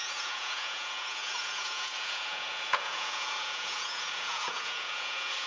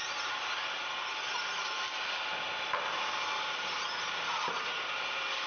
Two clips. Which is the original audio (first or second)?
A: second